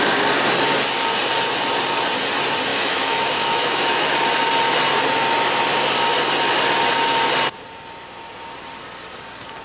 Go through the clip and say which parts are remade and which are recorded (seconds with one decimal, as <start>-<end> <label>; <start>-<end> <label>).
0.0-2.7 recorded; 2.7-4.1 remade; 4.1-9.6 recorded